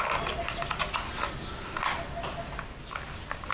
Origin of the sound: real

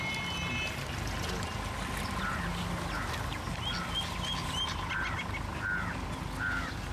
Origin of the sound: real